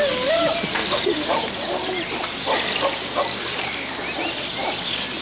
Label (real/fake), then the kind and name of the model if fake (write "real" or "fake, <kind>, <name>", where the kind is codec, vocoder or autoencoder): real